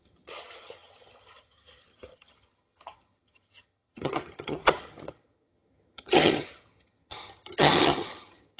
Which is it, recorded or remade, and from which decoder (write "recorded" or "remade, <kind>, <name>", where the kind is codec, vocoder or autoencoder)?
remade, vocoder, HiFi-GAN